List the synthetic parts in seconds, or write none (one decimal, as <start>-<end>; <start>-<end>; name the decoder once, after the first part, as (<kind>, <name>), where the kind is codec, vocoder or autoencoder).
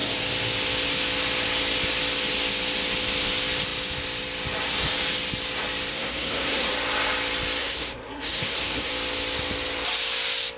5.9-6.7 (codec, SNAC); 7.6-8.9